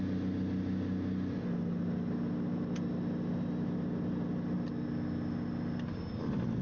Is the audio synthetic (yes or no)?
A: no